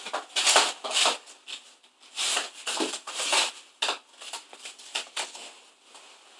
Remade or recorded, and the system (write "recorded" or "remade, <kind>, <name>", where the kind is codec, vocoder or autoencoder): recorded